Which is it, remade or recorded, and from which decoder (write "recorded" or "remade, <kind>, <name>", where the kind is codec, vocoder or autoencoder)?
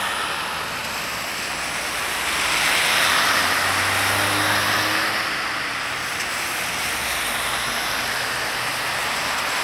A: recorded